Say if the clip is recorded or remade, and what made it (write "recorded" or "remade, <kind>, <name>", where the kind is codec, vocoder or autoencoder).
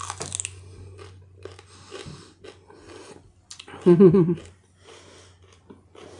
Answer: recorded